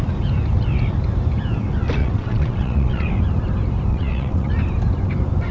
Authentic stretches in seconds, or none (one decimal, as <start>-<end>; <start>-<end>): 0.0-2.0; 3.1-3.9; 4.5-5.5